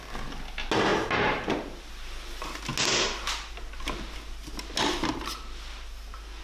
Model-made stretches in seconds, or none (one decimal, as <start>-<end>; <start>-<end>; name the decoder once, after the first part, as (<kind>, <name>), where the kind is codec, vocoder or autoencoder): 0.9-1.8 (vocoder, BigVGAN v2)